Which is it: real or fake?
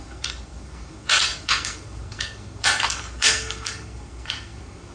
fake